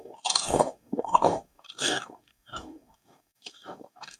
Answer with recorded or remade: remade